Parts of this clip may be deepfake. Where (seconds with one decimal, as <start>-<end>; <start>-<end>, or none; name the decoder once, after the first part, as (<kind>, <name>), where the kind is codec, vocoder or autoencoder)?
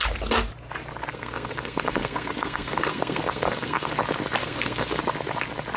1.1-3.9 (codec, SNAC); 4.4-5.0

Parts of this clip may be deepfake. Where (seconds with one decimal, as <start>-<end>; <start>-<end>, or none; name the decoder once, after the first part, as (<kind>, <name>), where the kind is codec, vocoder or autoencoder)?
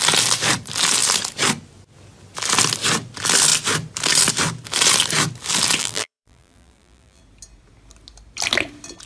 5.8-7.2 (vocoder, BigVGAN v2)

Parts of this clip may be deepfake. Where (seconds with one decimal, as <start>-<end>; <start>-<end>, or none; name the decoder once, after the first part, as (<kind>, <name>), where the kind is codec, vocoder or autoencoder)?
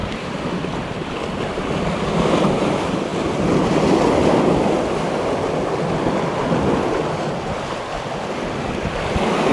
0.0-2.4 (vocoder, BigVGAN v2)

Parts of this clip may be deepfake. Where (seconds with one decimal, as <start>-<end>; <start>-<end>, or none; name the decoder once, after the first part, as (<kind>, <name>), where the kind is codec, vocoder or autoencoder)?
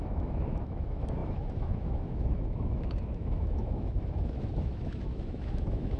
0.0-6.0 (autoencoder, DAC-VAE)